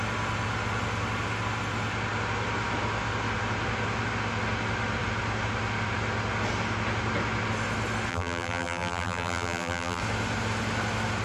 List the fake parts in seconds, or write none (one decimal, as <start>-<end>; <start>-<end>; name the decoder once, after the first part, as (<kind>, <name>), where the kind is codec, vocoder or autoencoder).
8.1-10.0 (vocoder, BigVGAN v2)